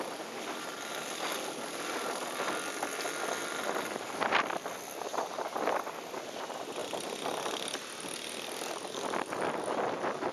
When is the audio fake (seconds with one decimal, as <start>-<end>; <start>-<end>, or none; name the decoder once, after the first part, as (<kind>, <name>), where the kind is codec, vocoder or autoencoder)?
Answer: 5.1-6.0 (vocoder, BigVGAN v2)